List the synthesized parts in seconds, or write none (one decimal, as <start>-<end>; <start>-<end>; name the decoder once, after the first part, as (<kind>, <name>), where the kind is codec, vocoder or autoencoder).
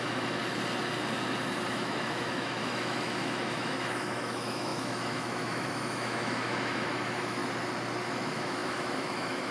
0.0-0.4 (autoencoder, DAC-VAE); 1.7-7.4; 8.0-9.5